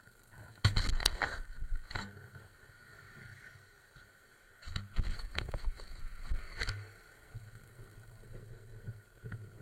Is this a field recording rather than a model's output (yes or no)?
no